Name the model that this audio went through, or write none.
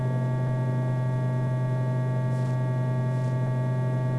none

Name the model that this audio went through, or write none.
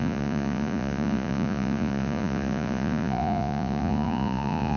vocoder, Vocos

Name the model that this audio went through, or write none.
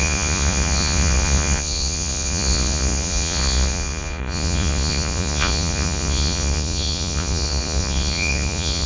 vocoder, Vocos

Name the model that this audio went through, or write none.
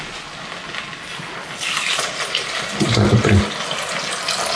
none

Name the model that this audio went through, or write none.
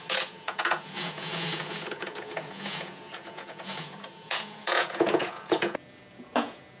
vocoder, Vocos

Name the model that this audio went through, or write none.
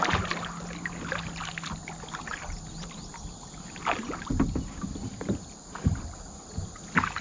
none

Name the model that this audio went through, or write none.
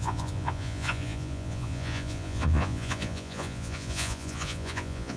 vocoder, Vocos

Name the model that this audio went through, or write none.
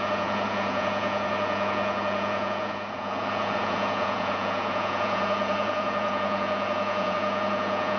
vocoder, Vocos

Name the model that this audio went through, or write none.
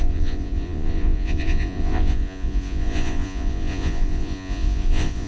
vocoder, Vocos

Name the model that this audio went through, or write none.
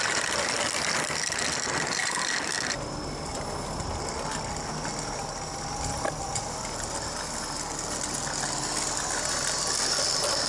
none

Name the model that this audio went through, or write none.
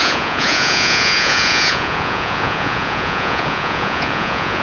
vocoder, Vocos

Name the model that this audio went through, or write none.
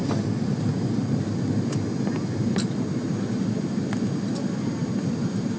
none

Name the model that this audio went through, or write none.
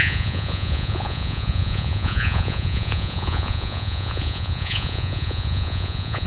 vocoder, Vocos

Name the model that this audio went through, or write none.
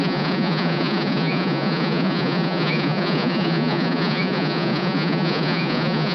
vocoder, Vocos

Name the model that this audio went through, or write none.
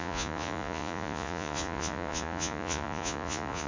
vocoder, Vocos